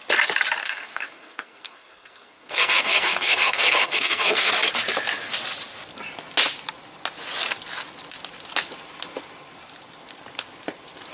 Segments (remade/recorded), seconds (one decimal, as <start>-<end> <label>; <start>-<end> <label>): 0.0-0.6 recorded; 0.6-4.5 remade; 4.5-11.1 recorded